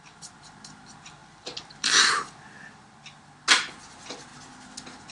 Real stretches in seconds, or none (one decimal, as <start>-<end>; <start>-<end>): 0.0-1.2; 2.3-5.1